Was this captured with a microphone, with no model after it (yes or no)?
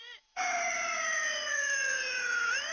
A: no